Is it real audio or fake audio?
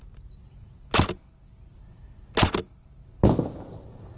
real